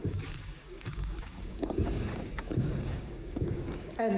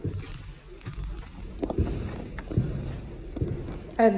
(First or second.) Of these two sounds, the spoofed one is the first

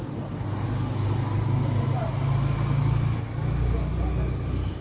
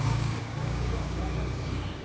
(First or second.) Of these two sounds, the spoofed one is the second